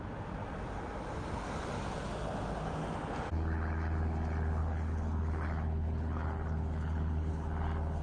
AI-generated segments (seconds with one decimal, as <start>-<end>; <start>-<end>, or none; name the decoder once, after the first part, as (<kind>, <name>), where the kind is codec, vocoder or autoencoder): 4.6-7.3 (codec, HILCodec)